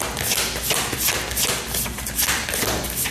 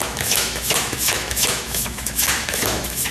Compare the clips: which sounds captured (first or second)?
first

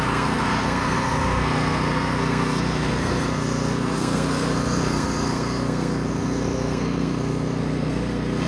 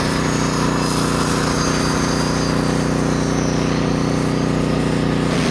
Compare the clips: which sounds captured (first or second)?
second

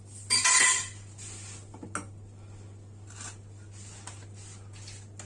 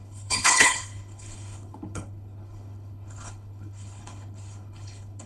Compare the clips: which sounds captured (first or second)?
first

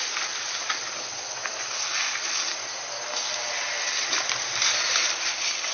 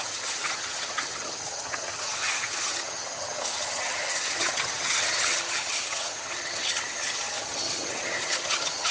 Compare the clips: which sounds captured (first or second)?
first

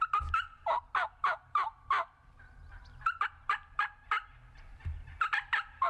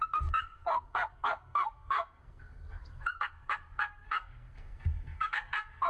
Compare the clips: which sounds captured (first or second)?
first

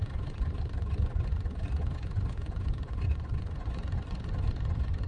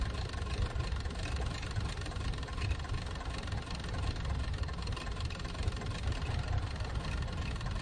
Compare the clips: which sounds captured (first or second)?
second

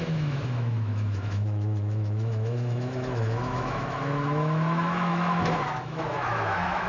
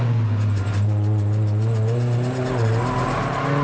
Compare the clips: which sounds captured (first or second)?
second